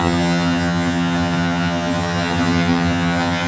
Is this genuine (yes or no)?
no